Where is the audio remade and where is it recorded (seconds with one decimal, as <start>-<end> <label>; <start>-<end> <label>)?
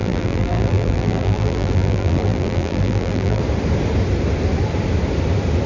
0.0-3.4 remade; 3.4-5.7 recorded